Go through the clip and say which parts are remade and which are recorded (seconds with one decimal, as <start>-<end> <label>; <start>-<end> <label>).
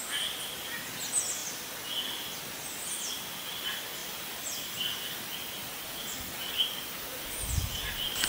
0.0-8.3 recorded